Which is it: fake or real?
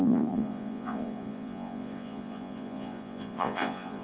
fake